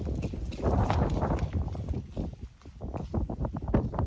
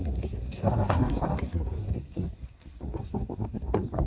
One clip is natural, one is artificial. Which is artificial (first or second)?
second